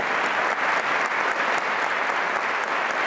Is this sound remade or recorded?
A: recorded